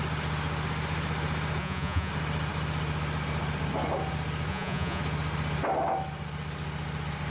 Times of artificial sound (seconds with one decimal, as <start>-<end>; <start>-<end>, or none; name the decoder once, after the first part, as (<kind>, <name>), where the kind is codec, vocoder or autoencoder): 1.6-2.1 (vocoder, Vocos); 4.5-5.0